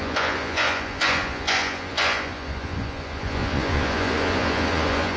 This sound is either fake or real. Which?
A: fake